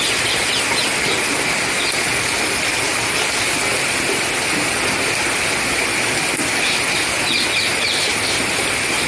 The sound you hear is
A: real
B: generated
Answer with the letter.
A